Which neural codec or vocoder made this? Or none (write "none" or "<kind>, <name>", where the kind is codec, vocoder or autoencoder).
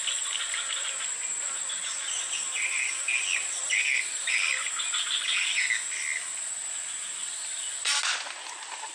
none